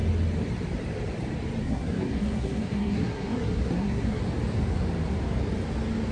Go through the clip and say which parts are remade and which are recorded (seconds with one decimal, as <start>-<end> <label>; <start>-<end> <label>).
0.0-1.6 recorded; 1.6-4.2 remade; 4.2-6.1 recorded